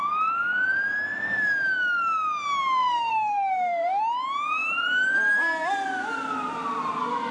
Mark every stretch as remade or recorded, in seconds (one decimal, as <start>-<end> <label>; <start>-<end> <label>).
0.0-2.8 recorded; 2.8-4.0 remade; 4.0-7.3 recorded